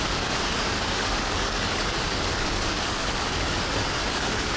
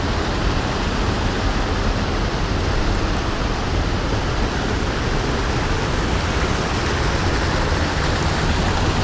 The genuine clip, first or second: second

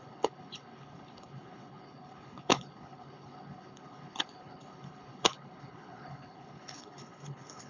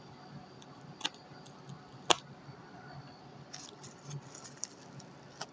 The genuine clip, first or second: second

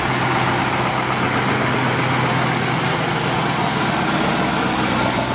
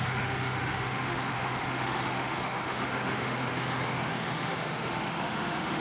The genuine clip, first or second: first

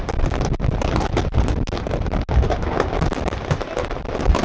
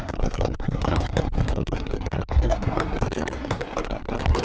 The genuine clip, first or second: first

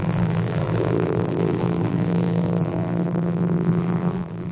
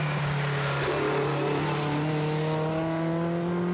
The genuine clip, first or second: second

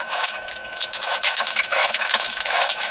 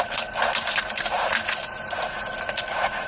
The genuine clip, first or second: second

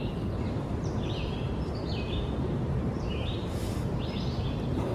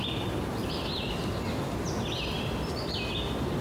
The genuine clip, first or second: second